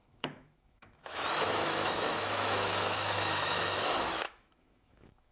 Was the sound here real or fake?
fake